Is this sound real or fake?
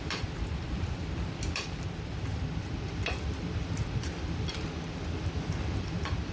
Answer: fake